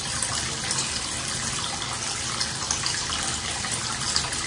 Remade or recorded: recorded